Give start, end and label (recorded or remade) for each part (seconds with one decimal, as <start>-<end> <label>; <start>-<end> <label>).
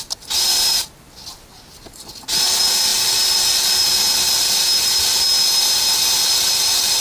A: 0.0-7.0 recorded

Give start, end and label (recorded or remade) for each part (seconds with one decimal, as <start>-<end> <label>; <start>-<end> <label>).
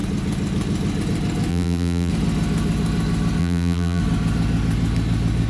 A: 0.0-1.5 recorded; 1.5-2.1 remade; 2.1-3.4 recorded; 3.4-4.0 remade; 4.0-5.5 recorded